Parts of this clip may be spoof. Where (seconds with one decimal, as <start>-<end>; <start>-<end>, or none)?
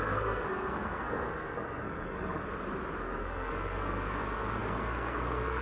0.0-2.4; 3.0-5.6